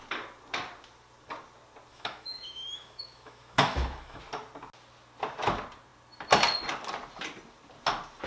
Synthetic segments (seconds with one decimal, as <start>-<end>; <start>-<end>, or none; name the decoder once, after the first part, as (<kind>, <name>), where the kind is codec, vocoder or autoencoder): 1.9-4.2 (autoencoder, DAC-VAE)

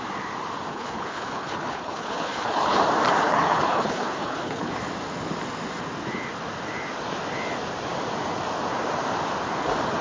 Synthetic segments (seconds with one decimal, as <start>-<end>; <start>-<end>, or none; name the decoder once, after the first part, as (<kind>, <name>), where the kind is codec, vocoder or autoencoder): 0.7-2.8 (codec, HILCodec); 3.2-4.7